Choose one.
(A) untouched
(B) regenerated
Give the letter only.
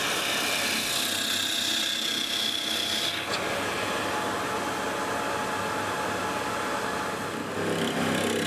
A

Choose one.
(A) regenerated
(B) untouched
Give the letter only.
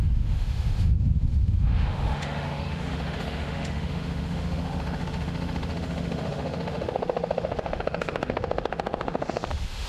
A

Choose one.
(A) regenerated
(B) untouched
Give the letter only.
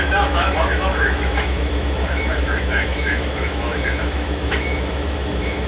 A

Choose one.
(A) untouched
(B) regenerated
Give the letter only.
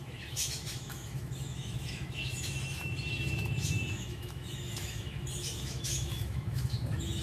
B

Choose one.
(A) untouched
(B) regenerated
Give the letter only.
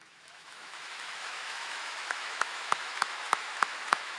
B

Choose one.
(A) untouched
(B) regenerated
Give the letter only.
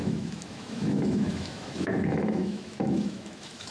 B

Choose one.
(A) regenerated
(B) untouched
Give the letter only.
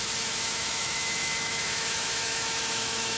A